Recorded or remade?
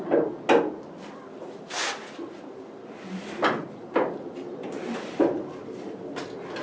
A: recorded